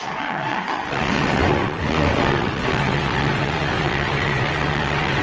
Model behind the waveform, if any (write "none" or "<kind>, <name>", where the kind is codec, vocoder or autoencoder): vocoder, WaveNeXt